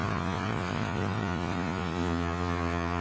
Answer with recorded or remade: remade